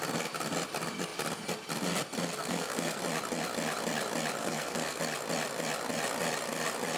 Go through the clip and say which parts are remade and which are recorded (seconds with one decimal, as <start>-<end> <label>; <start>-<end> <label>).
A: 0.0-2.4 recorded; 2.4-3.0 remade; 3.0-4.4 recorded; 4.4-5.0 remade; 5.0-7.0 recorded

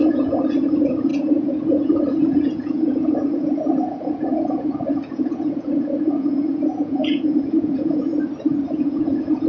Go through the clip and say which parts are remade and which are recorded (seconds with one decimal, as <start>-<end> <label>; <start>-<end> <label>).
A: 0.0-8.1 remade; 8.1-8.7 recorded; 8.7-9.5 remade

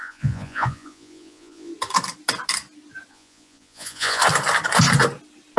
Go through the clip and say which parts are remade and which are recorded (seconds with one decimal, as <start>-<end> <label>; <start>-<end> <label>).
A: 0.0-1.7 remade; 1.7-3.1 recorded; 3.1-4.2 remade; 4.2-5.6 recorded

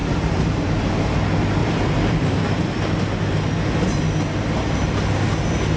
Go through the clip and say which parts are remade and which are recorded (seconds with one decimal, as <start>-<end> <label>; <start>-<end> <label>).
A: 0.0-0.9 remade; 0.9-1.6 recorded; 1.6-2.4 remade; 2.4-5.8 recorded

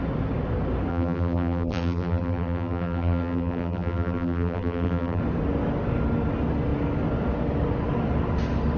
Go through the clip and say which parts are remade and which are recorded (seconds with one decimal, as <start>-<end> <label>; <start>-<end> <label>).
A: 0.0-0.9 recorded; 0.9-5.2 remade; 5.2-8.8 recorded

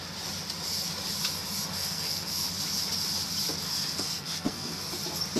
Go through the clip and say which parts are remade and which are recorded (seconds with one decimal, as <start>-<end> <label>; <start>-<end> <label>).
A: 0.0-1.7 recorded; 1.7-2.5 remade; 2.5-3.6 recorded; 3.6-4.9 remade; 4.9-5.4 recorded

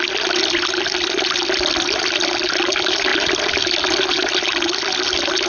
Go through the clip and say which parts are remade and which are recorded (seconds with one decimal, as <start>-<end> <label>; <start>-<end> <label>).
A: 0.0-5.5 recorded

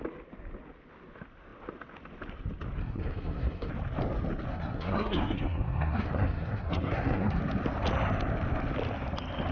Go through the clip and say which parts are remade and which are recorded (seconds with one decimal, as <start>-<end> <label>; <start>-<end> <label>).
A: 0.0-2.8 recorded; 2.8-3.7 remade; 3.7-4.5 recorded; 4.5-7.4 remade; 7.4-9.5 recorded